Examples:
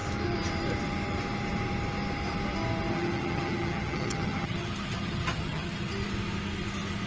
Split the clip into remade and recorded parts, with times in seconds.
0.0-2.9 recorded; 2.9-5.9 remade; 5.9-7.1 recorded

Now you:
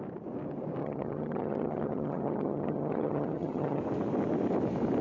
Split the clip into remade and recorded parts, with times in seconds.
0.0-0.8 recorded; 0.8-3.8 remade; 3.8-5.0 recorded